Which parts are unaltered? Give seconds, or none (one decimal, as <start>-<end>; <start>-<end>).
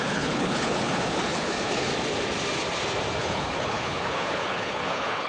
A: 1.9-3.2